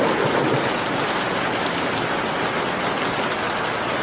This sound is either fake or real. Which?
real